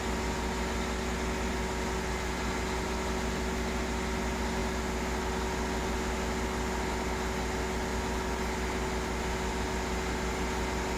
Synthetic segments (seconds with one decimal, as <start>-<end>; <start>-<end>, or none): none